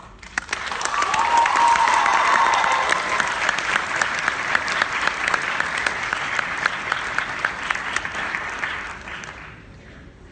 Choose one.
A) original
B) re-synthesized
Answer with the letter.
B